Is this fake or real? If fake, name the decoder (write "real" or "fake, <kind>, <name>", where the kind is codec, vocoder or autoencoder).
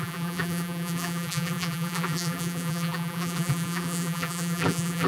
fake, vocoder, BigVGAN v2